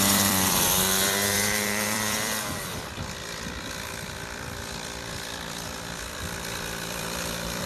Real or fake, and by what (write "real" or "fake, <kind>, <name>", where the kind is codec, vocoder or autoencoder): fake, vocoder, BigVGAN v2